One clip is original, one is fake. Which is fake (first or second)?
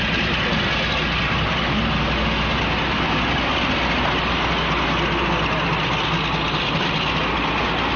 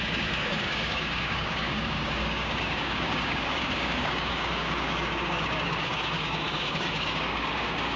second